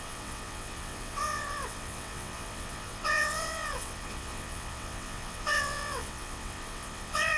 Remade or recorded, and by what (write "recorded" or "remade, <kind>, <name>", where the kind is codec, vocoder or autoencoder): remade, vocoder, WaveNeXt